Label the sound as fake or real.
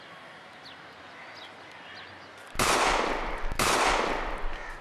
real